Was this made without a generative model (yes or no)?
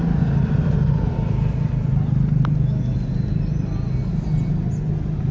yes